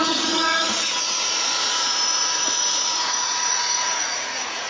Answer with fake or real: fake